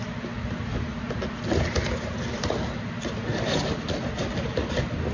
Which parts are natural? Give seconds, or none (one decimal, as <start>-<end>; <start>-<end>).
0.0-5.1